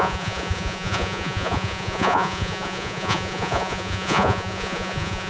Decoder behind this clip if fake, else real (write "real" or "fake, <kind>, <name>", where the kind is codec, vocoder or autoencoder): fake, vocoder, Vocos